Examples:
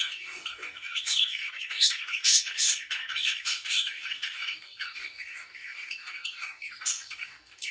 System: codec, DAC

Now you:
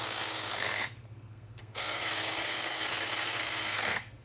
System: codec, SNAC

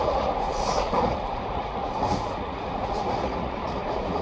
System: vocoder, Vocos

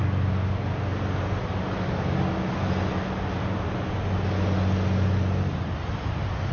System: none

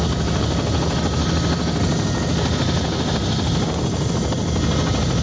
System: none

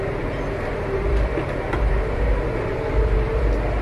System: vocoder, BigVGAN v2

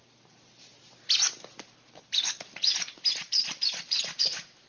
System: none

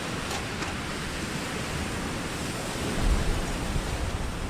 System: none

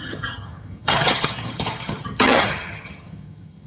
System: vocoder, HiFi-GAN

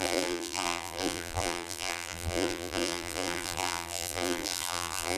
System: vocoder, BigVGAN v2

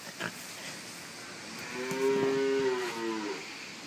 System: none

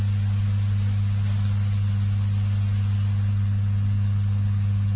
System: none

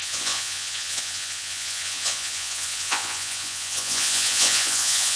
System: vocoder, Vocos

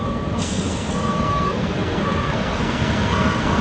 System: codec, SNAC